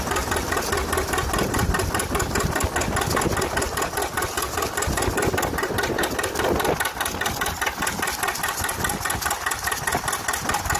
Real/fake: real